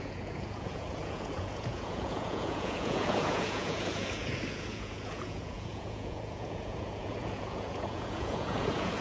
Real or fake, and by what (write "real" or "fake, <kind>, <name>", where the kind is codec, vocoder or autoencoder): fake, vocoder, Vocos